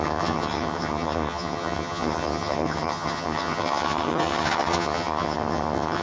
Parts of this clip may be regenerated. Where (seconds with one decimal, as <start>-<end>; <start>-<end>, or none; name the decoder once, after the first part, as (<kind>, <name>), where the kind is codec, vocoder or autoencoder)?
0.0-6.0 (vocoder, HiFi-GAN)